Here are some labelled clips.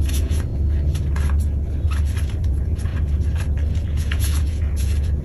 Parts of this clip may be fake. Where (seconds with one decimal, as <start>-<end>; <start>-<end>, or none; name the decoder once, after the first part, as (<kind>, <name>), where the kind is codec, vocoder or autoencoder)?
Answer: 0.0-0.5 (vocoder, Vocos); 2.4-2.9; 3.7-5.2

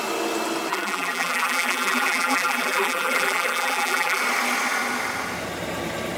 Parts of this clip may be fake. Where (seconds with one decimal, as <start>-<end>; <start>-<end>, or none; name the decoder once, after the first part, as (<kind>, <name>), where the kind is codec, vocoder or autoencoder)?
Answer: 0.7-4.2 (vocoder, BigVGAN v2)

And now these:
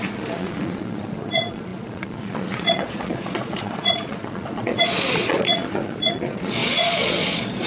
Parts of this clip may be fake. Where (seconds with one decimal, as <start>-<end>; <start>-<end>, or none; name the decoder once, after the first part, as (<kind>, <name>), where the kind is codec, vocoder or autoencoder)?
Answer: 0.0-7.7 (vocoder, Vocos)

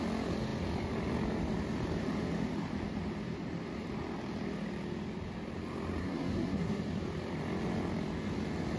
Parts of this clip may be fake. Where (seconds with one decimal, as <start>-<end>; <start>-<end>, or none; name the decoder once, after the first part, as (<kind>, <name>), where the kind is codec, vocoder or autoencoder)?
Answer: 6.0-6.8 (codec, SNAC)

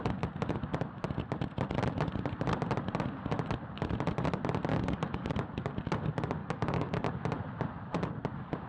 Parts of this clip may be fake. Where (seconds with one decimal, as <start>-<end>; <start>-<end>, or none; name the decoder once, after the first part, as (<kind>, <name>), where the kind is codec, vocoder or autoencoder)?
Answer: 4.7-5.3 (codec, DAC); 6.4-7.1

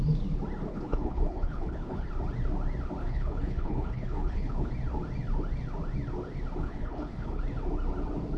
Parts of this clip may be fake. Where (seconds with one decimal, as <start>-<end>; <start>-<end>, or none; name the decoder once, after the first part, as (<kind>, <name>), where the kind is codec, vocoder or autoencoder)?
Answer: 0.7-2.1 (codec, HILCodec); 3.0-4.7; 6.6-7.4

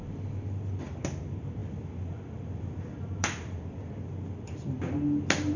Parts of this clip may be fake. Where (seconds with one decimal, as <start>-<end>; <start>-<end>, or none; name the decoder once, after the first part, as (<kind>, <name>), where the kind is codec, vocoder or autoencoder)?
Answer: none